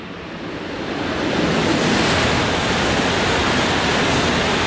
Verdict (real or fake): real